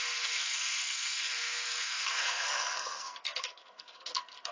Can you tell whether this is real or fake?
fake